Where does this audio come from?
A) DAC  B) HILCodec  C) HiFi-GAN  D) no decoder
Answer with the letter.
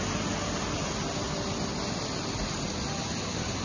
D